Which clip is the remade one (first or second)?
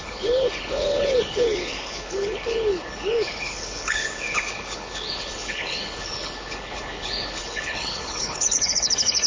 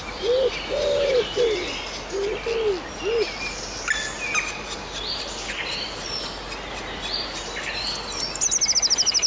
first